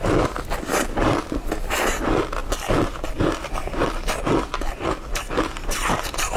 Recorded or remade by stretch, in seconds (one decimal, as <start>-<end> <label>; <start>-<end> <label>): 0.0-2.4 recorded; 2.4-2.9 remade; 2.9-6.4 recorded